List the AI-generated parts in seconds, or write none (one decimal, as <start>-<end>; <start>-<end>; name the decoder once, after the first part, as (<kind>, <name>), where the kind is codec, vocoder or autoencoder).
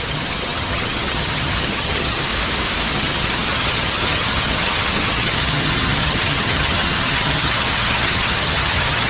0.0-2.3 (vocoder, HiFi-GAN); 2.9-9.1